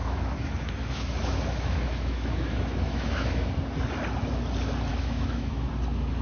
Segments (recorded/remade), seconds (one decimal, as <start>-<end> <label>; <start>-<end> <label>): 0.0-3.5 remade; 3.5-4.9 recorded; 4.9-5.7 remade; 5.7-6.2 recorded